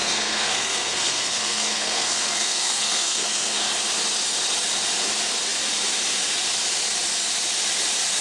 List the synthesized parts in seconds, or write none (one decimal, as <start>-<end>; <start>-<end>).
0.0-3.7